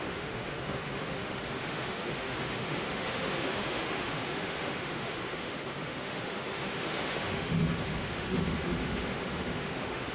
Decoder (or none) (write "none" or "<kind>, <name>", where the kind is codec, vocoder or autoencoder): autoencoder, DAC-VAE